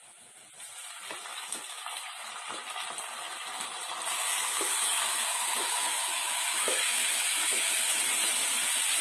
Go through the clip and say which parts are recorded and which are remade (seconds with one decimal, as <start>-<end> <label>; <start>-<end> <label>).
0.0-1.3 recorded; 1.3-2.3 remade; 2.3-4.2 recorded; 4.2-8.0 remade; 8.0-9.0 recorded